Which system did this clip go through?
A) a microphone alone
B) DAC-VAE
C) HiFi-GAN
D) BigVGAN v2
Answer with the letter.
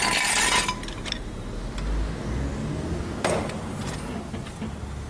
A